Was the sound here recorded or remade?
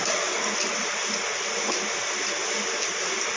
recorded